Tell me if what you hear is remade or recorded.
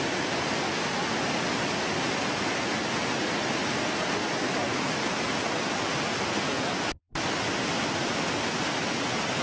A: recorded